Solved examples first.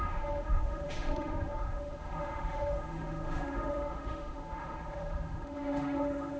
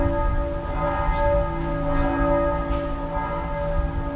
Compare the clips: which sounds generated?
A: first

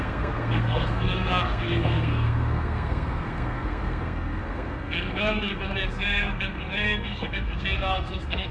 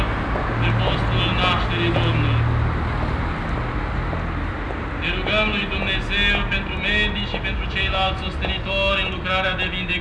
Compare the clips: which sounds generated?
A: first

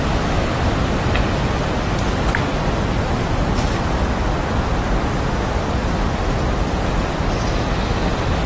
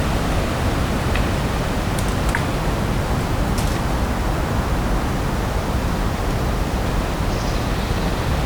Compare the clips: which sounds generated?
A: first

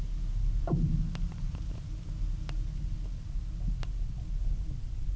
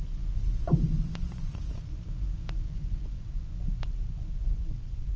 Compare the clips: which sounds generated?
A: second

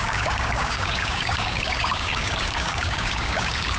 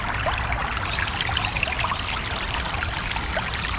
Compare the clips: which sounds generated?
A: first